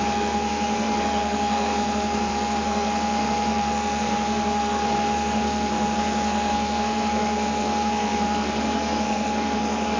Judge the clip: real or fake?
fake